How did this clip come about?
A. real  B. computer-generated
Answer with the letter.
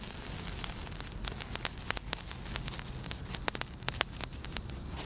A